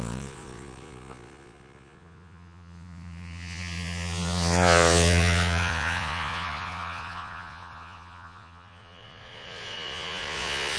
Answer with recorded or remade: remade